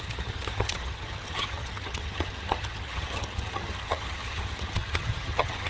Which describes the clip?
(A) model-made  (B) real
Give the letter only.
A